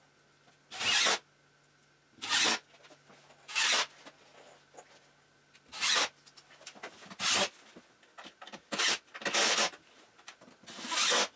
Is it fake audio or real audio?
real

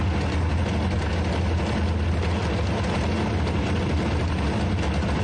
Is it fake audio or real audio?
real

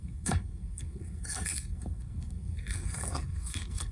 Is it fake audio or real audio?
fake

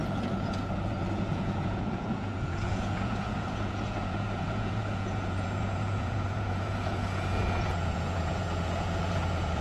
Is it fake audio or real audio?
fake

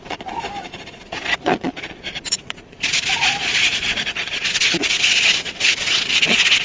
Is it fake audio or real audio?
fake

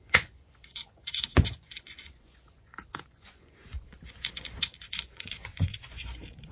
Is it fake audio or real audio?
fake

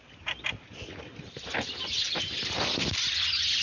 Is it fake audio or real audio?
real